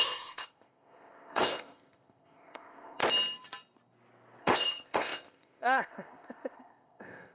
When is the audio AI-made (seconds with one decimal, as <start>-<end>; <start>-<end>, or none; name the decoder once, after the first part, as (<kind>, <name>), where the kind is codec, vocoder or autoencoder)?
0.0-3.0 (codec, ZipCodec); 4.4-7.3